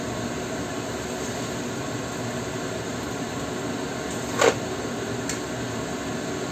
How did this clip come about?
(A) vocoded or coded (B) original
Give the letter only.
B